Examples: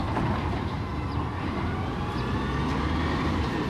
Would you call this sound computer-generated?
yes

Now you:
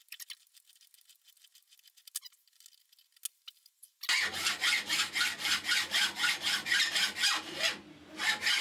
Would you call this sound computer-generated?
no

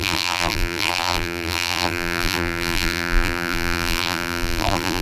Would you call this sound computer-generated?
yes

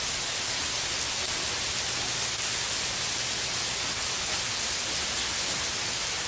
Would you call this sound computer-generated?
no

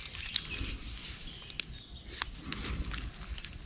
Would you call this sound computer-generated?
no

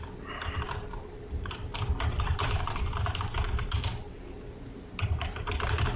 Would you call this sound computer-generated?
no